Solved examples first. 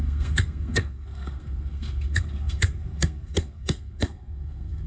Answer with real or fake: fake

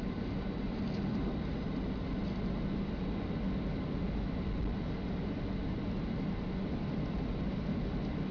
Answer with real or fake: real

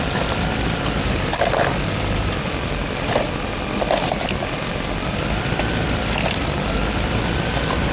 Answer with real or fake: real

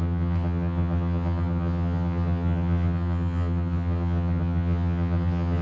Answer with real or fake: fake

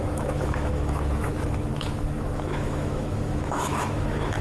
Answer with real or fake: fake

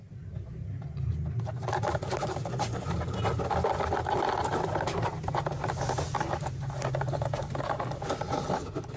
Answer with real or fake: real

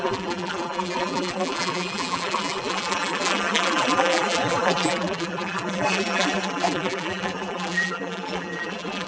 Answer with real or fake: fake